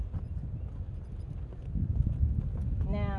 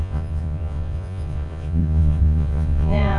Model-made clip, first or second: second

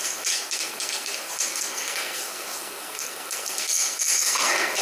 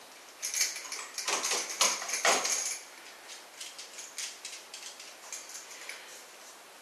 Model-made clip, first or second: first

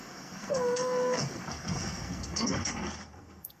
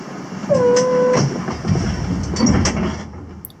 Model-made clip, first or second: first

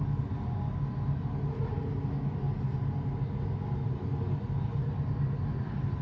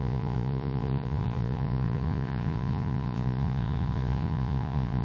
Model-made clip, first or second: second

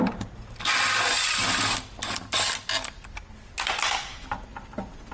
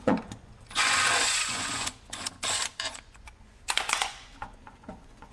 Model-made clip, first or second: second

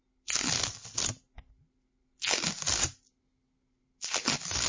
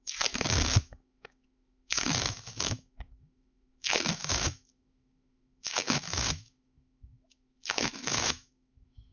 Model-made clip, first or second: second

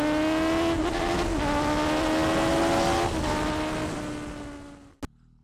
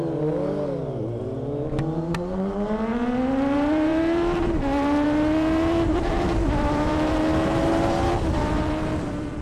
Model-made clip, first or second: second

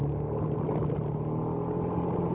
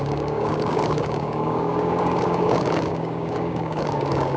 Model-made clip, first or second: second